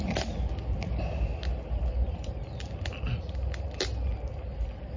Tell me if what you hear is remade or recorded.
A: recorded